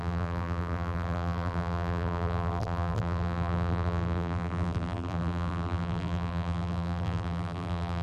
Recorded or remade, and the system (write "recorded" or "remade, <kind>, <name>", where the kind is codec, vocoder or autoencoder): remade, vocoder, BigVGAN v2